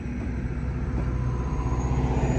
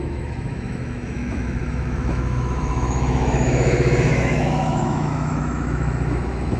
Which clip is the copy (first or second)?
second